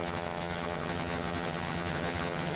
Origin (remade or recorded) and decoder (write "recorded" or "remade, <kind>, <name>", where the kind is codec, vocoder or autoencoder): remade, vocoder, HiFi-GAN